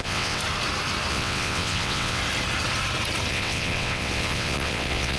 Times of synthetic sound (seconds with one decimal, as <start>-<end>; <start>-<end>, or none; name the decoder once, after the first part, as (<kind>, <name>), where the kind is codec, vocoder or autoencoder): 0.0-0.4 (vocoder, WaveNeXt); 1.1-2.2; 3.3-5.2